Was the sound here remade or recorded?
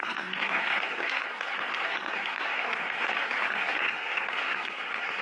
remade